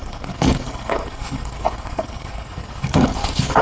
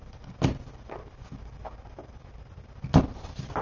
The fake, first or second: first